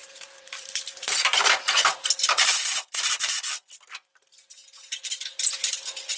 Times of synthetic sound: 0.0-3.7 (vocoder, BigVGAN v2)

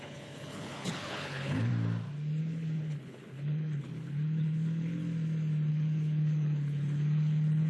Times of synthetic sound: 0.0-1.7 (codec, HILCodec); 2.4-5.0; 5.7-7.7